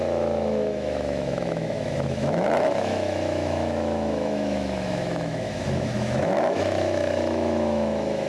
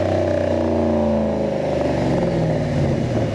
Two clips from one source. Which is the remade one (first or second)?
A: first